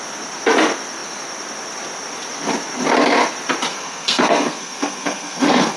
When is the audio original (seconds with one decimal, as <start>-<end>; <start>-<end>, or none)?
0.0-3.7